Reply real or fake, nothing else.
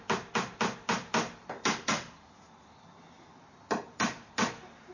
real